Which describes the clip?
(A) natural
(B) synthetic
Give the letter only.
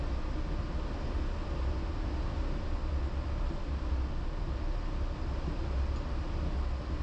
A